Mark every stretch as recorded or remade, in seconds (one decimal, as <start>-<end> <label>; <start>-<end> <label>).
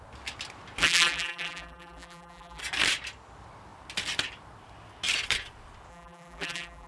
0.0-0.8 recorded; 0.8-2.6 remade; 2.6-5.9 recorded; 5.9-6.9 remade